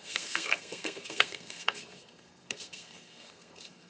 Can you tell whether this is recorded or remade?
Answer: remade